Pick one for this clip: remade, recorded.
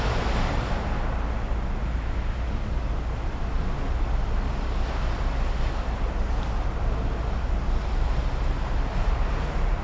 recorded